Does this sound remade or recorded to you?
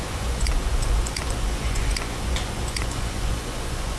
remade